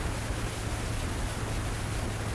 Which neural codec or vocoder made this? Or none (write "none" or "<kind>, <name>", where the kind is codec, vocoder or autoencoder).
none